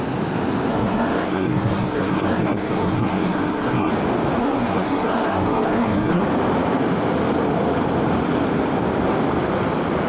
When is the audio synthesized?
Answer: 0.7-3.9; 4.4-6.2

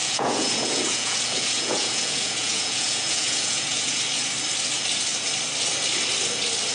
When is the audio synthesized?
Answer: 0.0-4.0